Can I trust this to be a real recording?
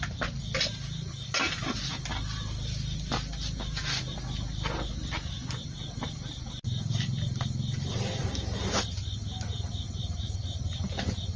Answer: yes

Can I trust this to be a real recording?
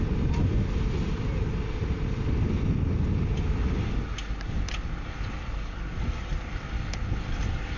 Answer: yes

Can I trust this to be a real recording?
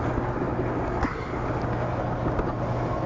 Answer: yes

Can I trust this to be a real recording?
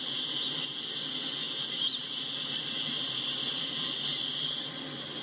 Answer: yes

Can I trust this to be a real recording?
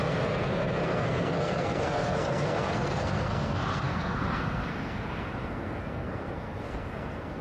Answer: no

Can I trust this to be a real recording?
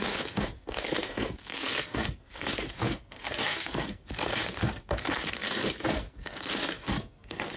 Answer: no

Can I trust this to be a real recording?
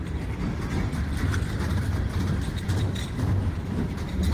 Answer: yes